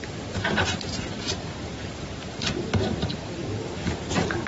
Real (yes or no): no